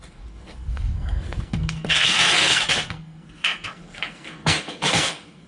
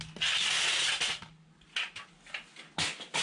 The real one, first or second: second